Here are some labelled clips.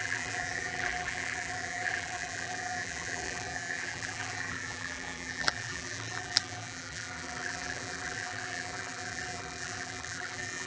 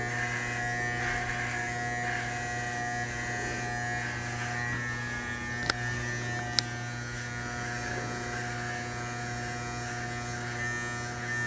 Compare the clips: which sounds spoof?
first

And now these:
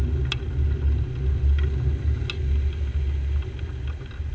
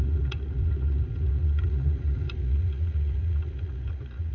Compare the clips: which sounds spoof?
second